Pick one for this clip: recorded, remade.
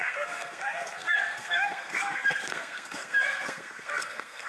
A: remade